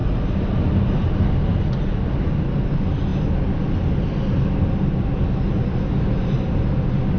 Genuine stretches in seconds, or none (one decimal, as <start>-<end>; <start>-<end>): 0.0-7.2